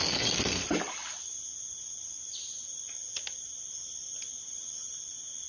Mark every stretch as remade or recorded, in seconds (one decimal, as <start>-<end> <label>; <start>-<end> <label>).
0.0-5.5 recorded